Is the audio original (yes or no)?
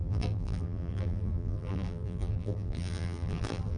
no